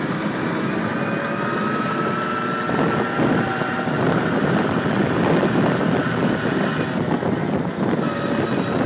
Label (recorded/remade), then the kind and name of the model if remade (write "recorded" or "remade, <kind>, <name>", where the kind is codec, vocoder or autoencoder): recorded